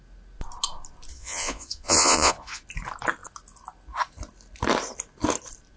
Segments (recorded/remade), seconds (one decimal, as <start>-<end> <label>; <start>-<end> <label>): 0.0-1.1 recorded; 1.1-2.6 remade; 2.6-5.8 recorded